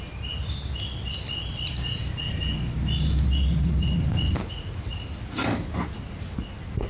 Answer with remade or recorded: recorded